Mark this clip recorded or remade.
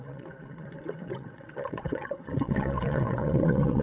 remade